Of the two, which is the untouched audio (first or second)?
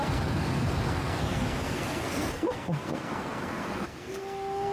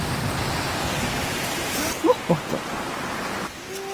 second